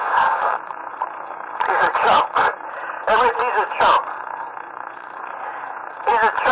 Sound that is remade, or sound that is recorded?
remade